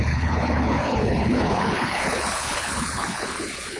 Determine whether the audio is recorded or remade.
remade